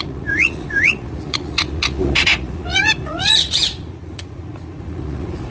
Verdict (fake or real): fake